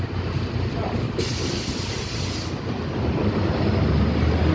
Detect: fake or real real